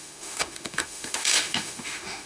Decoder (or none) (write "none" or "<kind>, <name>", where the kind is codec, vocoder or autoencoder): autoencoder, DAC-VAE